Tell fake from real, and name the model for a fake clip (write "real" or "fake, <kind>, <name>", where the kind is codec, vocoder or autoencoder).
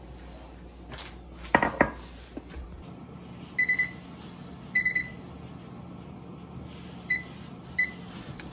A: real